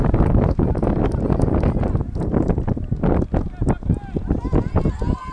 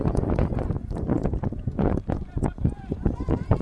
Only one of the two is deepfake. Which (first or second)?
second